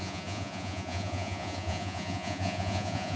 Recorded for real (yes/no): no